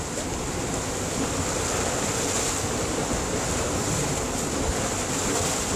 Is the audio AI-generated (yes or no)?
no